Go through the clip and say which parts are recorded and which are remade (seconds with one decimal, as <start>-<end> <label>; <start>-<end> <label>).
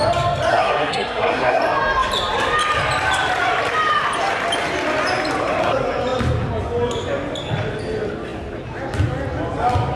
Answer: 0.0-0.5 recorded; 0.5-1.6 remade; 1.6-10.0 recorded